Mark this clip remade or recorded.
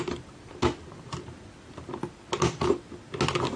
recorded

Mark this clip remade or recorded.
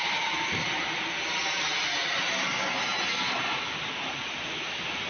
recorded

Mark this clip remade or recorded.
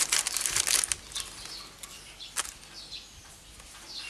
recorded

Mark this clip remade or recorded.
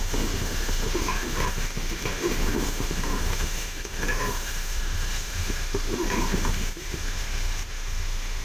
remade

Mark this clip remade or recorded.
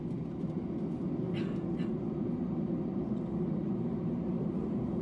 recorded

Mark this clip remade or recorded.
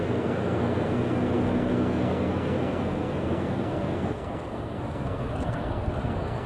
remade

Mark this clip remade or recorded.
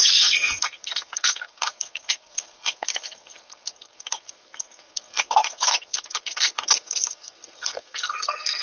remade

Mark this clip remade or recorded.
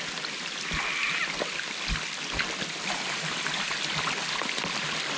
recorded